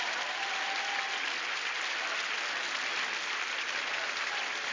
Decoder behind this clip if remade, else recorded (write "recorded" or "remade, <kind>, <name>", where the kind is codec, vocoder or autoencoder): recorded